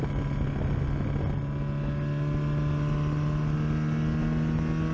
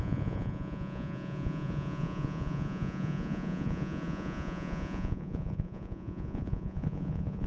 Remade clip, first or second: second